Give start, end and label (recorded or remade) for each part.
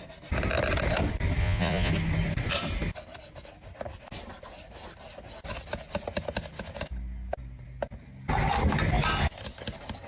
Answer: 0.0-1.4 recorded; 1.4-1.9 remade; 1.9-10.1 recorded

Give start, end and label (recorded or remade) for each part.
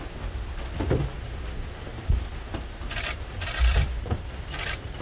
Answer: 0.0-1.9 recorded; 1.9-5.0 remade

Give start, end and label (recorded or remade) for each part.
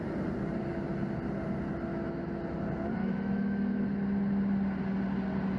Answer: 0.0-1.9 recorded; 1.9-2.4 remade; 2.4-3.0 recorded; 3.0-3.8 remade; 3.8-5.6 recorded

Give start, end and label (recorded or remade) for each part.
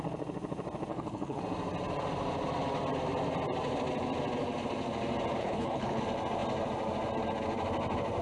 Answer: 0.0-0.9 recorded; 0.9-1.4 remade; 1.4-5.4 recorded; 5.4-6.0 remade; 6.0-8.2 recorded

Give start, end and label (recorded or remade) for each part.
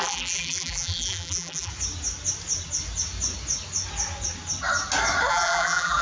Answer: 0.0-1.7 remade; 1.7-5.3 recorded; 5.3-6.0 remade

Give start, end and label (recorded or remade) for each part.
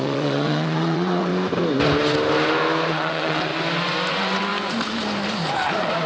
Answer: 0.0-1.3 remade; 1.3-2.9 recorded; 2.9-3.5 remade; 3.5-4.1 recorded; 4.1-4.5 remade; 4.5-6.1 recorded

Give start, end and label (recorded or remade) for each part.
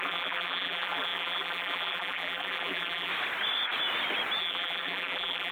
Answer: 0.0-3.1 remade; 3.1-4.4 recorded; 4.4-5.5 remade